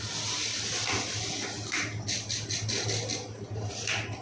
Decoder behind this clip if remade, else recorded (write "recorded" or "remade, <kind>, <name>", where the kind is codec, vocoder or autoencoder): recorded